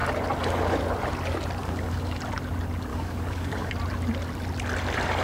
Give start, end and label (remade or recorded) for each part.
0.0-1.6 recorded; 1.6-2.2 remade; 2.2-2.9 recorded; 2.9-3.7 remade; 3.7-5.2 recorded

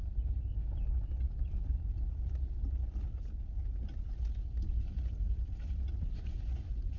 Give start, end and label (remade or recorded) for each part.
0.0-7.0 recorded

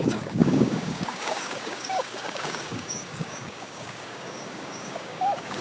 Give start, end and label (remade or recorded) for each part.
0.0-5.6 remade

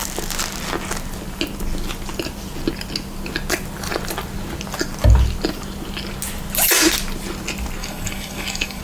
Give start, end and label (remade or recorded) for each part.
0.0-7.8 recorded; 7.8-8.8 remade